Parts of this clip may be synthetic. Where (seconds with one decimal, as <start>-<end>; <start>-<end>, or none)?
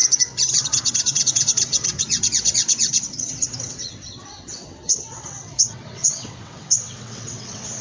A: 0.5-7.8